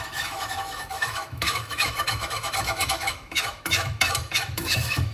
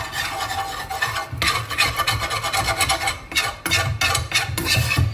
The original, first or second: second